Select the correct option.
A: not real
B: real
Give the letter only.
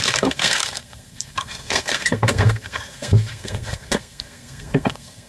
A